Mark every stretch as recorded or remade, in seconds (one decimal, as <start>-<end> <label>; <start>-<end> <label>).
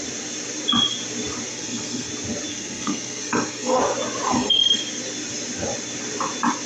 0.0-1.5 recorded; 1.5-2.1 remade; 2.1-2.5 recorded; 2.5-3.8 remade; 3.8-4.3 recorded; 4.3-4.8 remade; 4.8-6.7 recorded